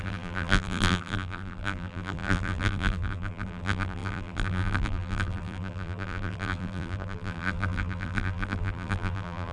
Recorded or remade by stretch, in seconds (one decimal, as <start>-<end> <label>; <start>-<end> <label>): 0.0-9.5 remade